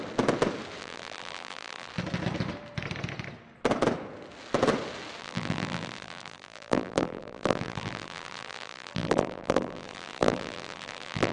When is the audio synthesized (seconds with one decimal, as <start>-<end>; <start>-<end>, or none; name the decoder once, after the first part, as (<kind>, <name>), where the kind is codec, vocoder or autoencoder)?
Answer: 0.8-1.9 (vocoder, BigVGAN v2); 5.2-11.3